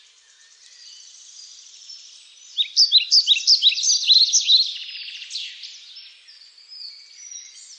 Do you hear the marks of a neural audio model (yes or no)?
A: no